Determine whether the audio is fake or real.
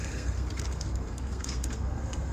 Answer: fake